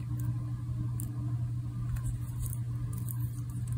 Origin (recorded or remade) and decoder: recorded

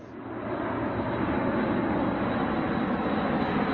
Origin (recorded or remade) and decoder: recorded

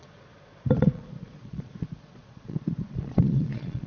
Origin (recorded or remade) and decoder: remade, vocoder, Vocos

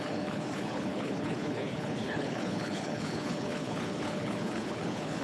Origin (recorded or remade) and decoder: remade, codec, HILCodec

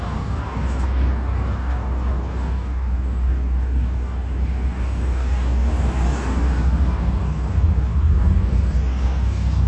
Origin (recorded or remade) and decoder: remade, codec, DAC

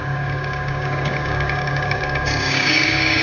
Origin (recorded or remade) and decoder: remade, codec, DAC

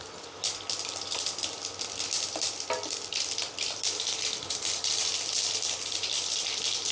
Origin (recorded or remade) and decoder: remade, vocoder, BigVGAN v2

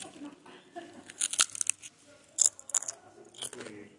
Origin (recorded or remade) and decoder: recorded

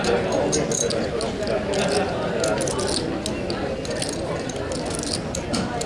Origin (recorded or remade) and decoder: recorded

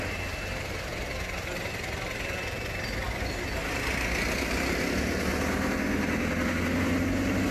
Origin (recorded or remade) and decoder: recorded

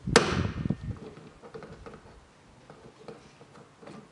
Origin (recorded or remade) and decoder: recorded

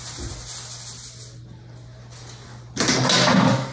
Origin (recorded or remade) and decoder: recorded